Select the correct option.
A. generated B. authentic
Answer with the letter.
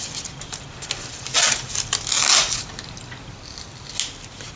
B